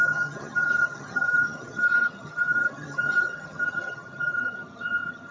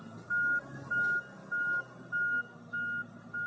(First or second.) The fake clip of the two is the first